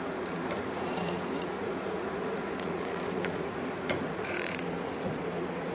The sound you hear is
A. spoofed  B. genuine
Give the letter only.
A